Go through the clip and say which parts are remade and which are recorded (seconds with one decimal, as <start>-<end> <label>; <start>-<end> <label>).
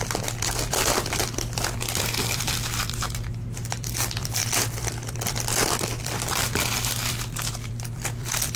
0.0-4.4 remade; 4.4-5.1 recorded; 5.1-8.6 remade